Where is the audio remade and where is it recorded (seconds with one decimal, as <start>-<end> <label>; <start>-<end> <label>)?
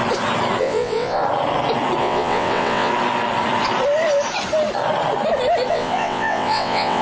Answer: 0.0-0.6 recorded; 0.6-1.2 remade; 1.2-2.0 recorded; 2.0-2.9 remade; 2.9-5.7 recorded; 5.7-7.0 remade